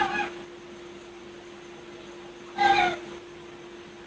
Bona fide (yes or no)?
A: yes